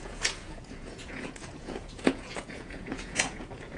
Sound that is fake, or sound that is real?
fake